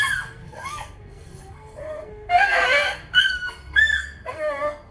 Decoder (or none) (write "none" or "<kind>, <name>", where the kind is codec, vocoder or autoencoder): codec, SNAC